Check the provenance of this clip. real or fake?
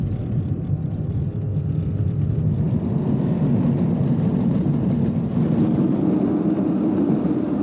real